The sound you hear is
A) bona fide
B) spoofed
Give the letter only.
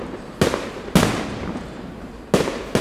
A